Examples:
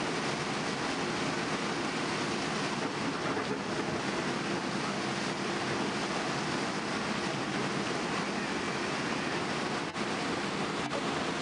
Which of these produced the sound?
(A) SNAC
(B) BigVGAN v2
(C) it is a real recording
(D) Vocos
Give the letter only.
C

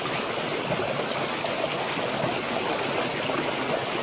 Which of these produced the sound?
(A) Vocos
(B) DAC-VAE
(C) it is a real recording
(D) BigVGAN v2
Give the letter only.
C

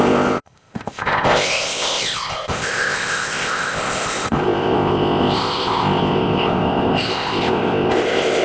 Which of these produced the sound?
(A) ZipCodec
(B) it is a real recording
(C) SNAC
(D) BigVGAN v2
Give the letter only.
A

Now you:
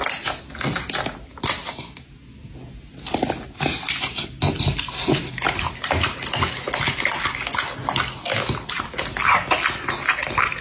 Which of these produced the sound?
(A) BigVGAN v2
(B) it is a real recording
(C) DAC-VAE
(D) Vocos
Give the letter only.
B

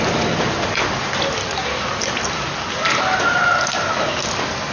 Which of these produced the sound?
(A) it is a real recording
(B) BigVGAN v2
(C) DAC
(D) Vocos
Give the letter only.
A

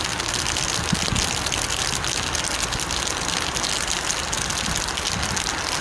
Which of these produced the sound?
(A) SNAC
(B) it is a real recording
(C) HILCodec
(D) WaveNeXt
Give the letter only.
B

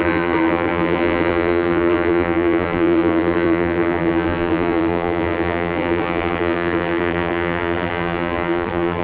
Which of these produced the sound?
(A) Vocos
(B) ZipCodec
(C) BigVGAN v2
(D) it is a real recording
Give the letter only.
C